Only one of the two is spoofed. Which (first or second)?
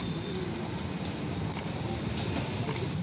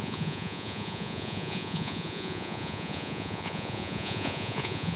second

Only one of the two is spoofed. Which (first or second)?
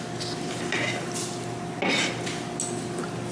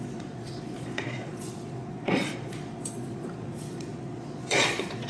second